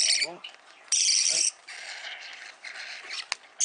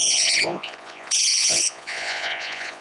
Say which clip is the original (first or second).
first